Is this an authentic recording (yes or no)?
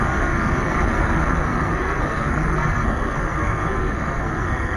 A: no